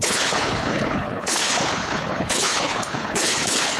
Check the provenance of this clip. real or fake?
fake